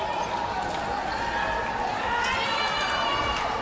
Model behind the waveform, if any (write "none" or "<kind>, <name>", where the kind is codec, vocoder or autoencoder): none